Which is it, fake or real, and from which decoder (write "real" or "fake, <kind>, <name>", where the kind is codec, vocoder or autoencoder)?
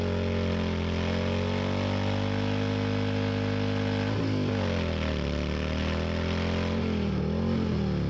real